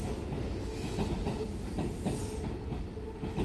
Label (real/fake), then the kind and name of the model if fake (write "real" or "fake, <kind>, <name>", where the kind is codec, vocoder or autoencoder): real